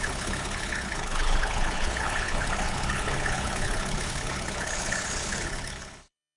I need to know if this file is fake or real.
fake